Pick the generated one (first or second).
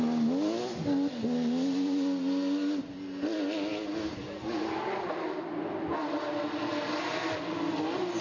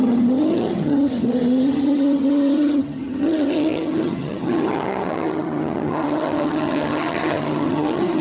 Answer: second